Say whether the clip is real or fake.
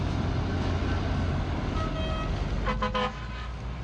real